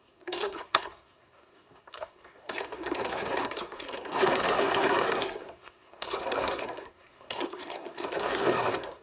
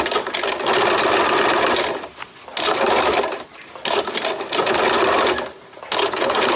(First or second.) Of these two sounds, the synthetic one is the first